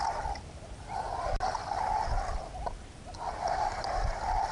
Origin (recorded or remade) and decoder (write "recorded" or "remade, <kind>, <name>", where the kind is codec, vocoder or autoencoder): recorded